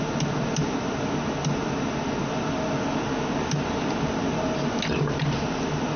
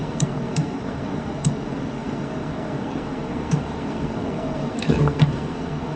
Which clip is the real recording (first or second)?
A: first